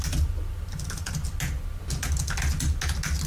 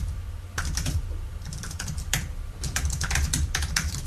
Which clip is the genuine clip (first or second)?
first